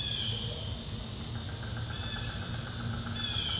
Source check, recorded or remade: recorded